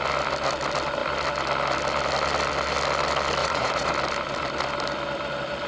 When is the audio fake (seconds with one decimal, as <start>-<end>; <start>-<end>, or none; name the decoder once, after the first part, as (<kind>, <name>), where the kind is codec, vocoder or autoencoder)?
3.4-3.9 (vocoder, Vocos)

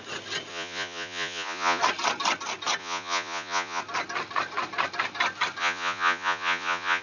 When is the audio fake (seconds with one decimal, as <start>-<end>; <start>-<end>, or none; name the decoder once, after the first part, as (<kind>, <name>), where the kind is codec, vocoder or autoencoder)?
0.5-1.8 (vocoder, Vocos); 2.8-3.8; 5.6-7.0

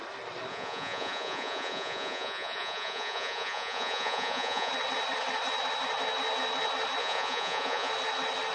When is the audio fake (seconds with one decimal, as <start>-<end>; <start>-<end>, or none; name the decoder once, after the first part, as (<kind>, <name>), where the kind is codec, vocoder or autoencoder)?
0.5-4.7 (vocoder, Vocos); 7.0-7.9

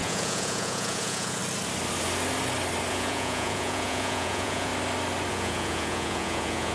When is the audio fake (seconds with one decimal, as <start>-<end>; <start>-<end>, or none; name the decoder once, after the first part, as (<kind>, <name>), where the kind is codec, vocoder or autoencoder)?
0.0-1.4 (vocoder, Vocos); 2.9-4.7; 5.3-6.7

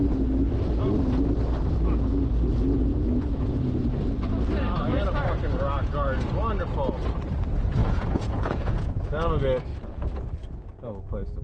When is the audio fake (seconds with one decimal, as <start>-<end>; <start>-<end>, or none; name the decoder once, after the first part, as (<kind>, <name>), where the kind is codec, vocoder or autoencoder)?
2.9-3.6 (vocoder, Vocos); 7.8-8.9; 9.7-10.3